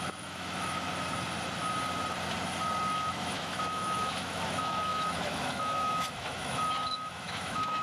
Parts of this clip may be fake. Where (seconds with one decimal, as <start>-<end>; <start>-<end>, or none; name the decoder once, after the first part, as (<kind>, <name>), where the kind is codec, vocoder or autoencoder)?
0.0-0.9 (autoencoder, DAC-VAE); 2.9-7.8